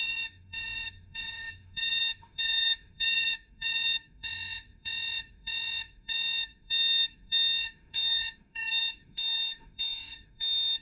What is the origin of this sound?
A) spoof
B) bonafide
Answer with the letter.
A